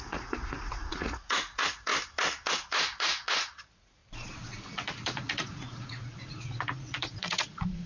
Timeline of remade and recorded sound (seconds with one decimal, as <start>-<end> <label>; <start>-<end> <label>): 0.0-1.9 remade; 1.9-2.5 recorded; 2.5-4.0 remade; 4.0-4.7 recorded; 4.7-7.9 remade